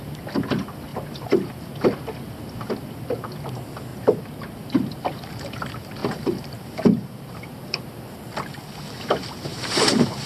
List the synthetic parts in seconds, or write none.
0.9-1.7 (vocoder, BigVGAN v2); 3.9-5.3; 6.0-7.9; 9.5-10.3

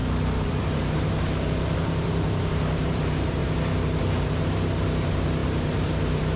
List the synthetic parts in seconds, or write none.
0.5-3.4 (vocoder, BigVGAN v2); 4.0-6.4

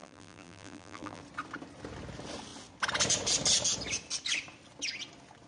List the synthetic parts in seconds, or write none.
0.0-1.2 (vocoder, BigVGAN v2)

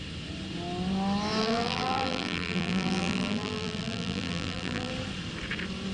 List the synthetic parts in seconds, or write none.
1.4-4.9 (vocoder, BigVGAN v2)

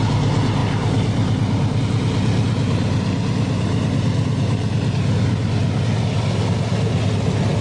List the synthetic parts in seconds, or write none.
none

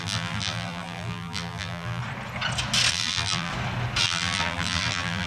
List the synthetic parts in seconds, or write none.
0.0-2.0 (vocoder, BigVGAN v2); 2.9-3.5; 4.0-5.3

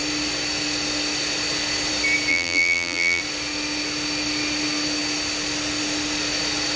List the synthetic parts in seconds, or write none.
2.3-3.2 (vocoder, BigVGAN v2)

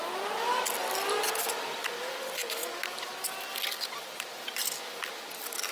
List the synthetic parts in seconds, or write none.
0.8-1.4 (vocoder, BigVGAN v2)